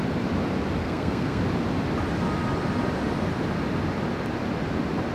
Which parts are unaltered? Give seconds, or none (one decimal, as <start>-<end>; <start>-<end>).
0.0-0.8; 1.4-5.1